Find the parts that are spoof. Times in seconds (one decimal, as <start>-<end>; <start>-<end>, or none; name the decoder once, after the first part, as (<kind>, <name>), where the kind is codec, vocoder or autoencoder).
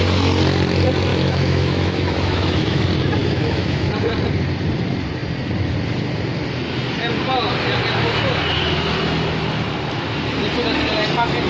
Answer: 1.1-2.8 (autoencoder, DAC-VAE); 3.2-3.9